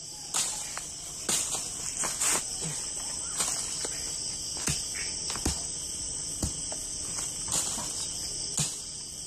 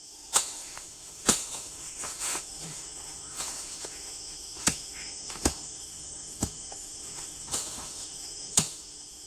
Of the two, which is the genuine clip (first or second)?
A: first